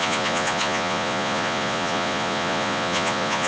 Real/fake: fake